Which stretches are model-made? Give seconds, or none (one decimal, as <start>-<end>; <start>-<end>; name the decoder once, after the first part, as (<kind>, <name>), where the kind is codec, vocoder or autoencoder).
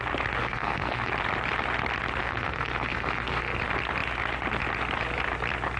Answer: 0.4-1.1 (codec, SNAC); 2.2-3.6